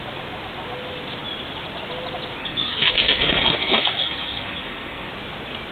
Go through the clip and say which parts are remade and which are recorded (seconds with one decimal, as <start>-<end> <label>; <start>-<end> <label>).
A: 0.0-2.4 recorded; 2.4-5.1 remade; 5.1-5.7 recorded